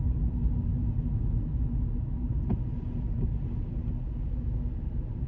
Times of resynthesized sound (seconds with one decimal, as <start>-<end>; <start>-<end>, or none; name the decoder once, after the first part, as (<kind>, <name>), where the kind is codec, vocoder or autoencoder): none